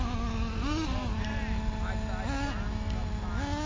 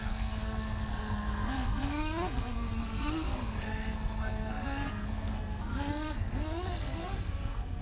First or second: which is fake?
second